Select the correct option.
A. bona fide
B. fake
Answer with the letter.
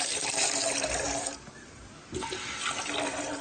A